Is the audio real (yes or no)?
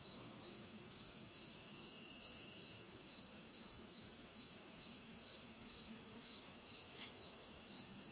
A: no